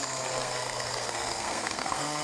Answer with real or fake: fake